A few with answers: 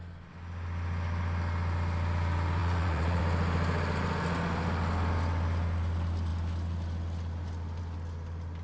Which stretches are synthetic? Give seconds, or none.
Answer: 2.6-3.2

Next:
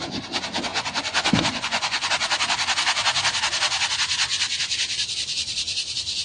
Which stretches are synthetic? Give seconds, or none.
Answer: 0.7-2.1

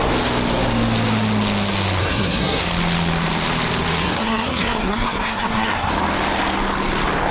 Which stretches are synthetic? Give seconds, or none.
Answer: 2.0-2.6; 4.0-5.9

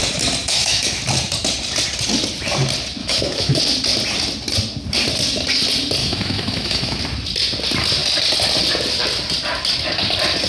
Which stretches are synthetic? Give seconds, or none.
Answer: 0.4-1.0; 3.0-3.6; 6.0-7.0

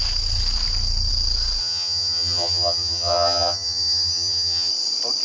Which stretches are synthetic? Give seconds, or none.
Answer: 1.6-4.7

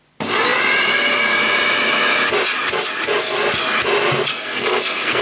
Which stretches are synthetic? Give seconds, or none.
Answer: 4.3-5.2

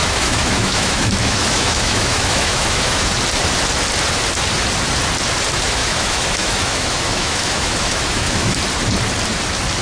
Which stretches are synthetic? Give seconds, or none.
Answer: 0.0-3.1; 5.8-8.6

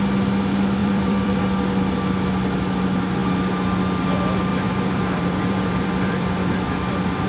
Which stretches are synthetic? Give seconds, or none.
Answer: 0.8-1.4; 4.5-6.5